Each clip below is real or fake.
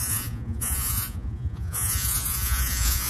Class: fake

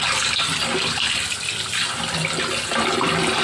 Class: real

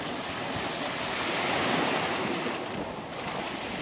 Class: real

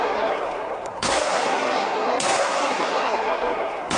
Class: fake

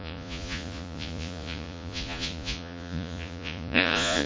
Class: fake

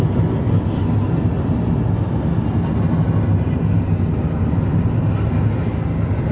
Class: real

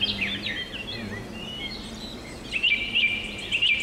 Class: real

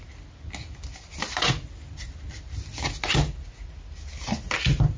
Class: real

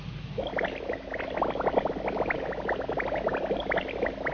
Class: real